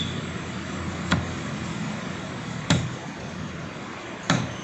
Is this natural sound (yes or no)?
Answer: no